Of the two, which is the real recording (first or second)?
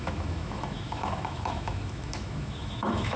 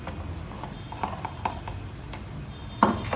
second